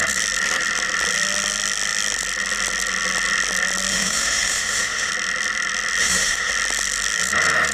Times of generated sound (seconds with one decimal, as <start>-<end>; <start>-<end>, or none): 3.9-5.1; 6.0-6.5